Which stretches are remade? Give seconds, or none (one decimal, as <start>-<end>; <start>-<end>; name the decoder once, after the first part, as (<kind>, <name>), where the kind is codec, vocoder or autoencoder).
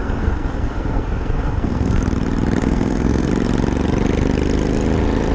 0.0-2.0 (codec, SNAC); 2.6-3.3